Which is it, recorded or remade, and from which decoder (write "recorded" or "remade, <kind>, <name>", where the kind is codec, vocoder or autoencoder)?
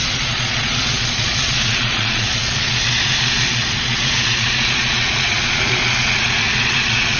remade, vocoder, Vocos